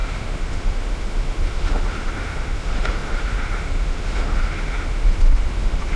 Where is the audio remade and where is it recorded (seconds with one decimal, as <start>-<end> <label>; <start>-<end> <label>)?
0.0-6.0 remade

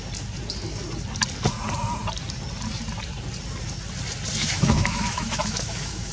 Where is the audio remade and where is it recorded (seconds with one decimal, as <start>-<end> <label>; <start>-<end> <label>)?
0.0-4.4 recorded; 4.4-6.1 remade

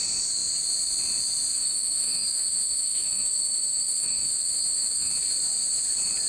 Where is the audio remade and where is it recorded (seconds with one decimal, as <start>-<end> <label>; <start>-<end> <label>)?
0.0-1.5 recorded; 1.5-5.1 remade; 5.1-6.3 recorded

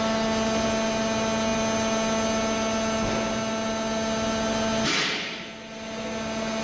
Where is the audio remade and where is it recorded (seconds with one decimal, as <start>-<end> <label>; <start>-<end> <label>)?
0.0-6.6 recorded

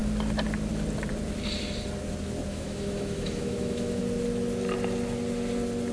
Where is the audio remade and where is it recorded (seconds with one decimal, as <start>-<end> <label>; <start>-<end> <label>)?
0.0-2.5 recorded; 2.5-4.0 remade; 4.0-5.9 recorded

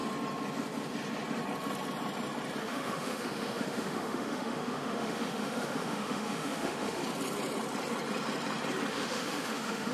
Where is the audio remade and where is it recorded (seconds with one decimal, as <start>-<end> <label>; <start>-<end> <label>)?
0.0-2.6 recorded; 2.6-7.0 remade; 7.0-8.9 recorded; 8.9-9.9 remade

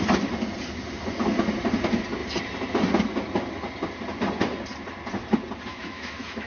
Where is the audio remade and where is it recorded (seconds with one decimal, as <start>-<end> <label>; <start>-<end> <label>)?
0.0-5.7 recorded; 5.7-6.5 remade